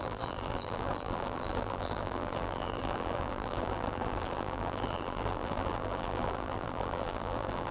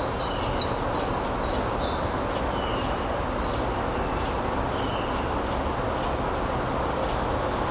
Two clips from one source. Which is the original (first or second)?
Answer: second